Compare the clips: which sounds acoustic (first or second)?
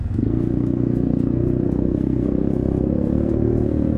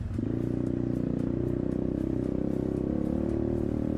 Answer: second